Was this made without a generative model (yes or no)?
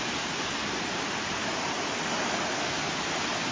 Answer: yes